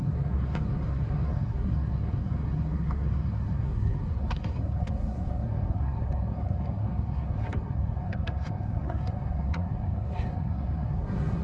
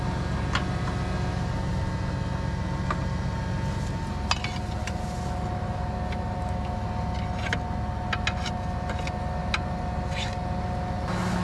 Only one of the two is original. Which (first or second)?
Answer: second